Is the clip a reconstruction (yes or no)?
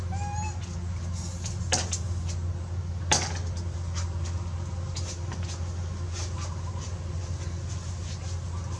no